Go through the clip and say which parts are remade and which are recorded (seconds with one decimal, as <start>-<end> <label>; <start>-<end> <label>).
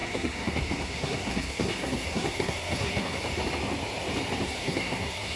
0.0-3.2 remade; 3.2-4.6 recorded; 4.6-5.4 remade